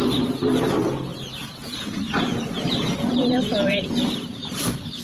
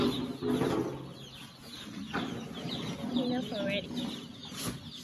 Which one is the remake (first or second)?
first